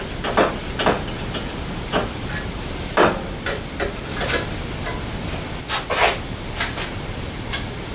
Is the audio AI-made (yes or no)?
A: no